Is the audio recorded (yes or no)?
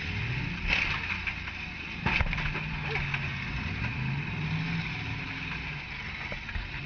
yes